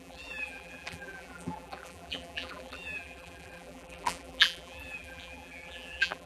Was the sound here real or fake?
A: fake